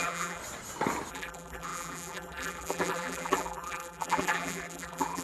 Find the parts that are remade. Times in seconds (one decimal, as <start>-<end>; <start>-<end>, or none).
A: 0.0-0.4; 1.1-5.2